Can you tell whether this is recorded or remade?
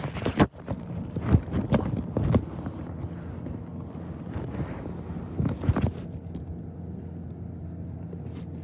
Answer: recorded